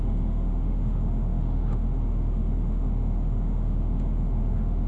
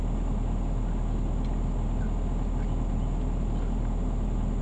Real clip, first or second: second